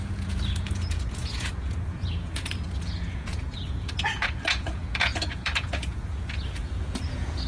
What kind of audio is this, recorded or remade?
remade